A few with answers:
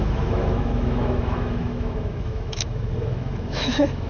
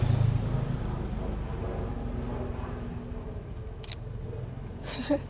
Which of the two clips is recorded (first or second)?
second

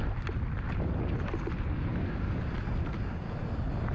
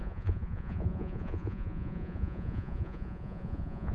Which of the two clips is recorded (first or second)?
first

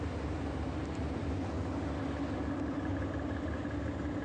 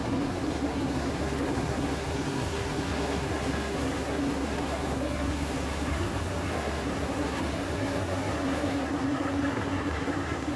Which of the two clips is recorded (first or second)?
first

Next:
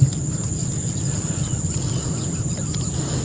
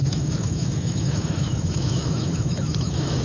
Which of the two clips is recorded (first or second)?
first